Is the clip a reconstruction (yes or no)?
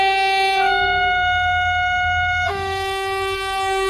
yes